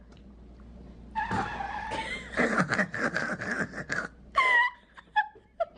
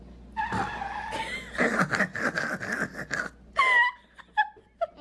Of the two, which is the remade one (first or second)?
first